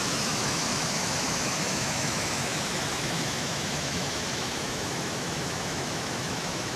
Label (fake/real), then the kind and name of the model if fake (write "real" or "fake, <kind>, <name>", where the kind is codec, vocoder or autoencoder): fake, autoencoder, DAC-VAE